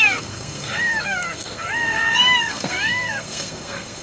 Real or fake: fake